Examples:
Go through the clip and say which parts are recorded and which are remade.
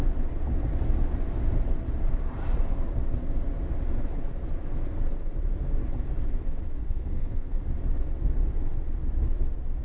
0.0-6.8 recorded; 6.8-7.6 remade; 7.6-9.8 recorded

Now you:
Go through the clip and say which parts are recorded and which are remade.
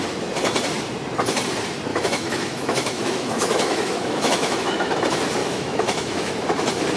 0.0-1.9 recorded; 1.9-4.9 remade; 4.9-5.4 recorded; 5.4-6.3 remade; 6.3-7.0 recorded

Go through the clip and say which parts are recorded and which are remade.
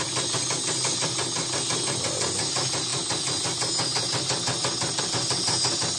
0.0-6.0 recorded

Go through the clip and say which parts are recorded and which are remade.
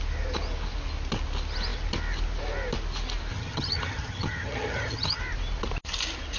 0.0-3.3 recorded; 3.3-5.2 remade; 5.2-6.4 recorded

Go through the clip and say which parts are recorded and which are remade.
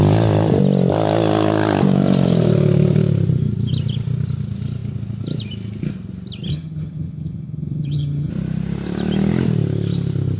0.0-6.5 recorded; 6.5-8.3 remade; 8.3-10.4 recorded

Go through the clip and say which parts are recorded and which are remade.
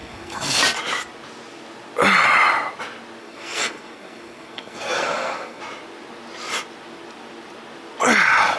0.0-0.6 remade; 0.6-3.2 recorded; 3.2-5.6 remade; 5.6-8.6 recorded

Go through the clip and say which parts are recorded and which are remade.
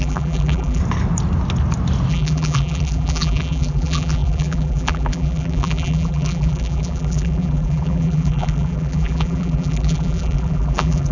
0.0-0.8 remade; 0.8-2.1 recorded; 2.1-11.1 remade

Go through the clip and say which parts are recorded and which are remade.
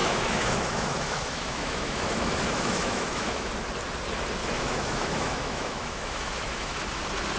0.0-3.5 remade; 3.5-4.4 recorded; 4.4-7.0 remade; 7.0-7.4 recorded